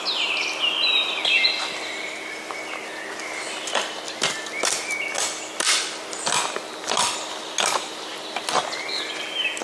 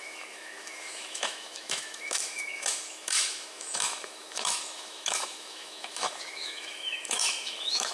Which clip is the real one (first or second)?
first